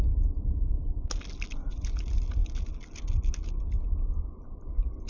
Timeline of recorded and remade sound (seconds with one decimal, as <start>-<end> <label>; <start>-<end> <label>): 0.0-5.1 recorded